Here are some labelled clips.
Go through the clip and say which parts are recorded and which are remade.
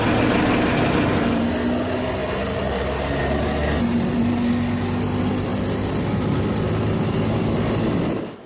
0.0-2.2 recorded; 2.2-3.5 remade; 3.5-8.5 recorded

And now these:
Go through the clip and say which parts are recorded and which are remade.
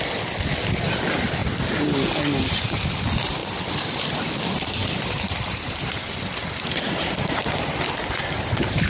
0.0-3.4 recorded; 3.4-4.3 remade; 4.3-4.8 recorded; 4.8-7.3 remade; 7.3-8.9 recorded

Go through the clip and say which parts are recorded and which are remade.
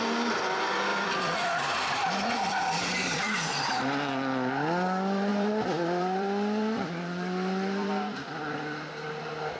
0.0-0.9 recorded; 0.9-3.8 remade; 3.8-5.3 recorded; 5.3-9.6 remade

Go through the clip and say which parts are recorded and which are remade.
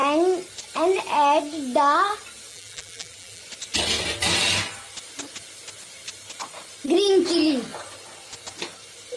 0.0-2.5 recorded; 2.5-3.4 remade; 3.4-9.2 recorded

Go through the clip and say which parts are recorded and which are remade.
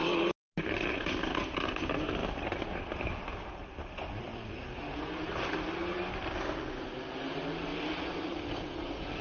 0.0-2.2 recorded; 2.2-4.6 remade; 4.6-9.2 recorded